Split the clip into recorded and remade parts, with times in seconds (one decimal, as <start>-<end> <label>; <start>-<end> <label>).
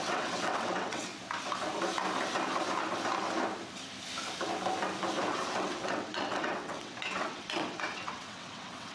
0.0-1.1 remade; 1.1-5.3 recorded; 5.3-8.9 remade